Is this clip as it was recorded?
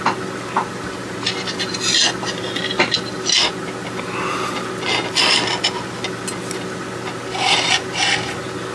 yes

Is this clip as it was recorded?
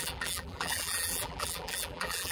no